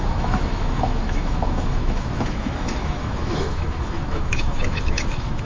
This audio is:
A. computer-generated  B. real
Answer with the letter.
A